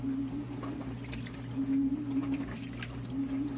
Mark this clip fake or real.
real